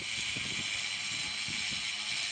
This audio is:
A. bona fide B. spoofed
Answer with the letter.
A